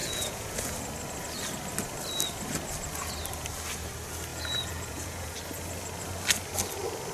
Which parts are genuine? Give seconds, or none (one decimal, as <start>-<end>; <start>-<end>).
0.8-4.3; 5.4-7.1